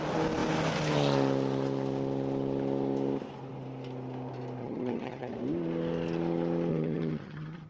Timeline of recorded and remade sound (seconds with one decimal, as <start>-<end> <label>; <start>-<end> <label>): 0.0-4.6 recorded; 4.6-5.3 remade; 5.3-6.7 recorded; 6.7-7.7 remade